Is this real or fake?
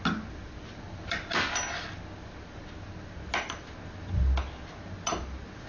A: real